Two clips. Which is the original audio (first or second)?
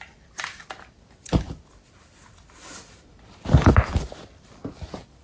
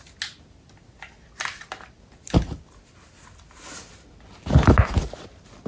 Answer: second